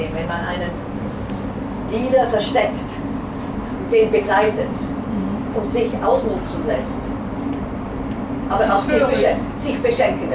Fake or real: real